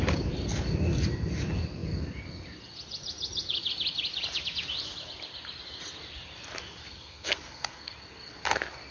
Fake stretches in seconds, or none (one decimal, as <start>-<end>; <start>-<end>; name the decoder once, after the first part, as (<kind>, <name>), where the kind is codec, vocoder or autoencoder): 6.9-7.9 (codec, SNAC)